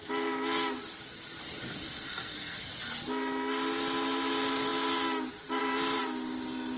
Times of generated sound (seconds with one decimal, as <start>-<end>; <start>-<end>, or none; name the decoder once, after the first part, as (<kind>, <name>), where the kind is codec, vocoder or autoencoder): 1.8-2.7 (codec, SNAC)